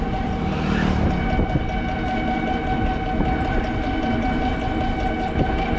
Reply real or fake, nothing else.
real